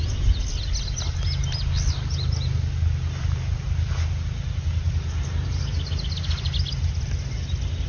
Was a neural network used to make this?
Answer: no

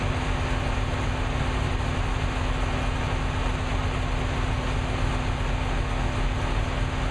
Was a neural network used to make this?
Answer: no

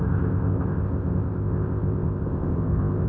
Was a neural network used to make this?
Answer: yes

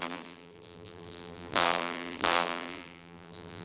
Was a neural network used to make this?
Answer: yes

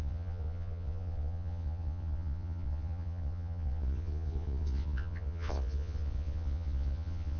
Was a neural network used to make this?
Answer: yes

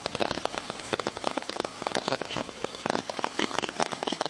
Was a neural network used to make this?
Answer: yes